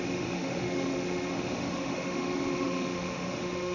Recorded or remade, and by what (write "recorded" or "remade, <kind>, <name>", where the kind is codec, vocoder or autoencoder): remade, autoencoder, DAC-VAE